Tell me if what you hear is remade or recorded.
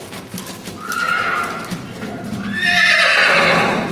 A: recorded